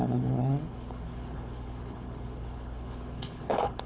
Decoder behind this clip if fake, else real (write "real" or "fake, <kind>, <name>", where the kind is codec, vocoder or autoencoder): fake, codec, HILCodec